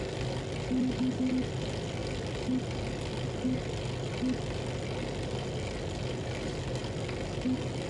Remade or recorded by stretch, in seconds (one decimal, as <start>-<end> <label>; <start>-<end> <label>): 0.0-7.9 recorded